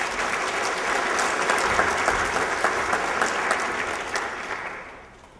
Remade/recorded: recorded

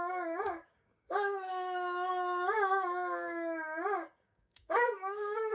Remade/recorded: remade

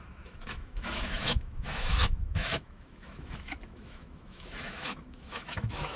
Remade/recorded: remade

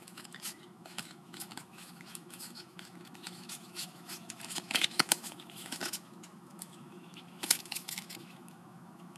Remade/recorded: remade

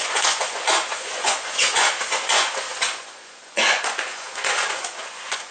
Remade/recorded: remade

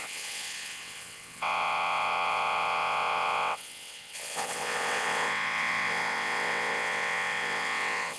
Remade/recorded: remade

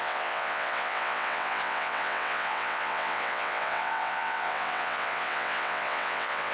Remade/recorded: remade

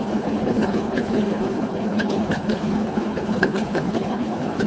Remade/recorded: remade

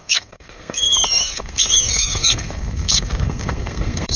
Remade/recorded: remade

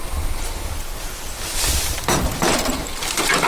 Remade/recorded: remade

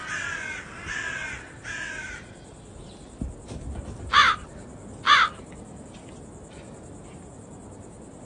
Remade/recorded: recorded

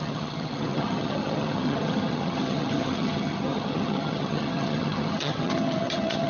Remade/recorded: remade